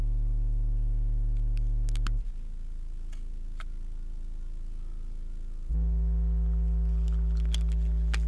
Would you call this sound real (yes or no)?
yes